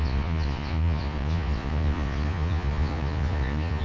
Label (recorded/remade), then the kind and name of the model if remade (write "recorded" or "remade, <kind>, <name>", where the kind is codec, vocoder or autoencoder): remade, vocoder, Vocos